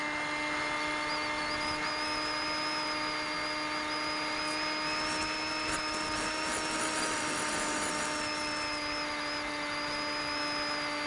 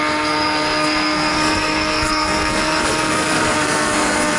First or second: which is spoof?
second